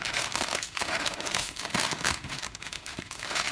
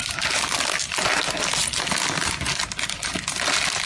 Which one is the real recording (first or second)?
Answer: second